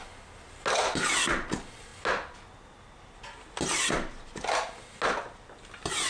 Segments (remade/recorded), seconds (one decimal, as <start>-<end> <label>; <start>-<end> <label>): 0.0-6.1 recorded